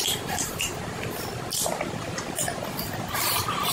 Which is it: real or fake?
real